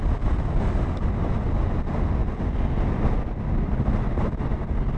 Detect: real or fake real